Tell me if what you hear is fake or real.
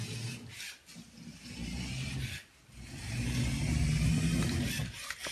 real